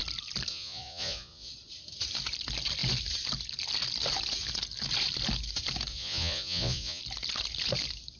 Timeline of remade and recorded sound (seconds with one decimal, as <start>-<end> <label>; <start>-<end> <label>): 0.0-0.5 recorded; 0.5-1.5 remade; 1.5-5.9 recorded; 5.9-7.0 remade; 7.0-8.2 recorded